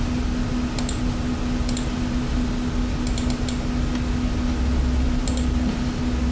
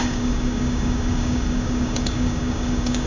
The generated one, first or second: second